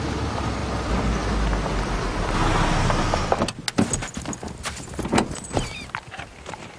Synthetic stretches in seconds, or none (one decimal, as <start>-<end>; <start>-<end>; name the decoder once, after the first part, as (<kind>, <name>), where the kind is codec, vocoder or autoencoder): 0.0-0.6 (vocoder, BigVGAN v2); 4.6-6.8